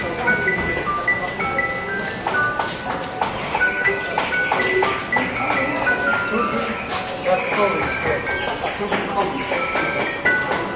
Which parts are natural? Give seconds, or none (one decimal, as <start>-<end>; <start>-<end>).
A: 0.0-3.4; 3.9-10.8